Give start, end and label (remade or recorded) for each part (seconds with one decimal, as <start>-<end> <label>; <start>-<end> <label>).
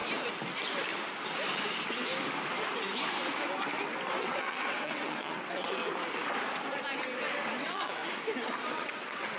0.0-4.2 recorded; 4.2-5.8 remade; 5.8-7.6 recorded; 7.6-8.0 remade; 8.0-8.7 recorded; 8.7-9.4 remade